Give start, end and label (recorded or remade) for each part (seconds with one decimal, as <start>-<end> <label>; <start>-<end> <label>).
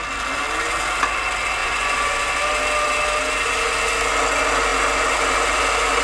0.0-1.6 recorded; 1.6-2.4 remade; 2.4-6.0 recorded